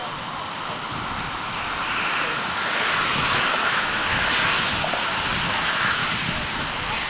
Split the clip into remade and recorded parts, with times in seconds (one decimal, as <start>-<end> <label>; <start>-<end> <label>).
0.0-3.0 recorded; 3.0-4.0 remade; 4.0-5.5 recorded; 5.5-6.0 remade; 6.0-7.1 recorded